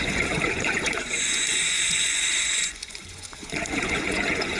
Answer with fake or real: fake